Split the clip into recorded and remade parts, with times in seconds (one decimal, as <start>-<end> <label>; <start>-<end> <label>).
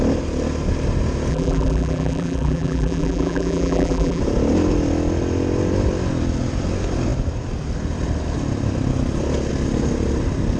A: 0.0-1.3 recorded; 1.3-4.2 remade; 4.2-10.6 recorded